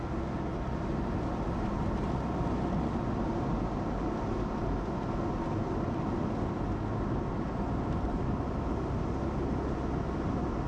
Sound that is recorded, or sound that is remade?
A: recorded